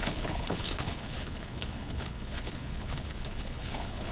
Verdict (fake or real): fake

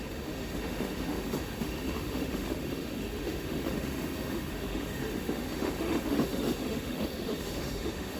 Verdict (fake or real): fake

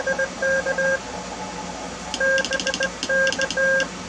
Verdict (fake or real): real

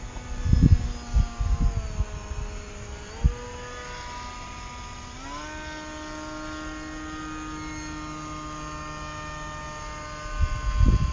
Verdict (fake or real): real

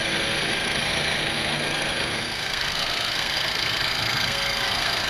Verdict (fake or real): fake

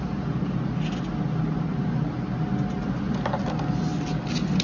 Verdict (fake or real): real